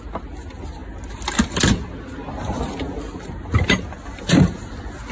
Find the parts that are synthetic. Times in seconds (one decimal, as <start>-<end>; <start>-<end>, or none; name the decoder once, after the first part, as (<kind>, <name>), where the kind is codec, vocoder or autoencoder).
none